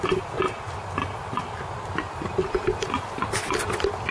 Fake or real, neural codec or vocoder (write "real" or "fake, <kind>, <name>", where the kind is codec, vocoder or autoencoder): real